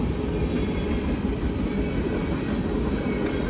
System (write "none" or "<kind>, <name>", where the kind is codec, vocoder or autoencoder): none